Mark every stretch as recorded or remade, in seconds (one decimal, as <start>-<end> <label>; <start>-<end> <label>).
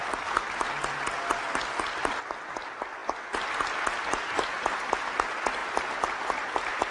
0.0-6.9 recorded